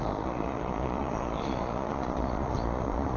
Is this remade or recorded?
remade